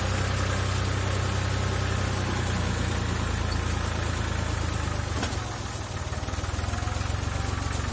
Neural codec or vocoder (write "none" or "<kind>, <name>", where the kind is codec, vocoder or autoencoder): none